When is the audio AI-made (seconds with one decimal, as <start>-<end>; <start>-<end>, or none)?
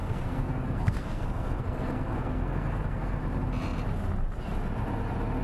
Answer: 0.0-3.2